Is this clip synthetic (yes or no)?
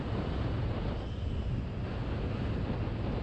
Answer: no